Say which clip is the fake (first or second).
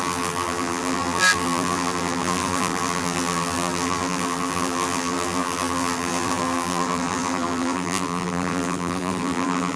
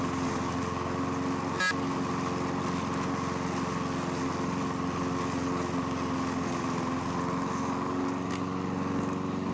first